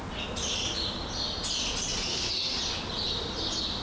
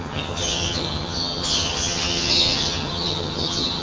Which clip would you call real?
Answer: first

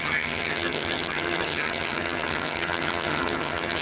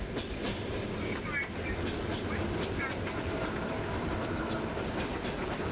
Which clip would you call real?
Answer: second